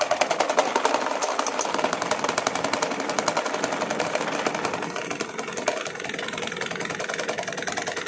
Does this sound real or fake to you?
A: real